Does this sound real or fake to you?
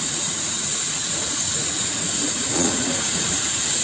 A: fake